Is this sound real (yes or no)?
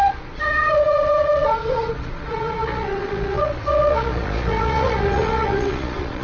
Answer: no